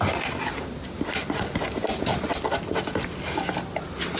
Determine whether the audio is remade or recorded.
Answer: recorded